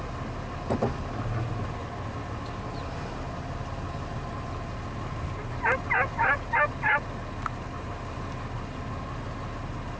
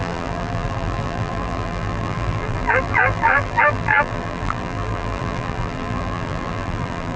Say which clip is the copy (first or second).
second